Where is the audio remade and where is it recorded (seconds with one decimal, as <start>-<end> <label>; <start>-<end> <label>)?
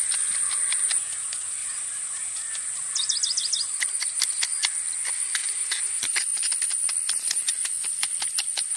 0.0-1.6 recorded; 1.6-2.5 remade; 2.5-5.4 recorded; 5.4-6.5 remade; 6.5-8.8 recorded